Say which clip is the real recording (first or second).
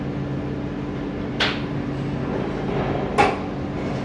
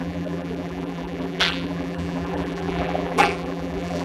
first